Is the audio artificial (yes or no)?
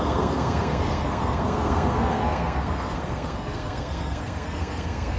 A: yes